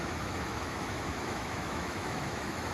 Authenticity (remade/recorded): remade